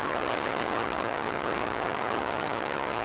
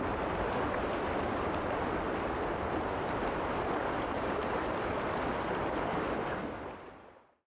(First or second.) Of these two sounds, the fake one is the first